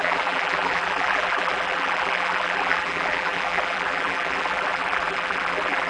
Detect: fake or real fake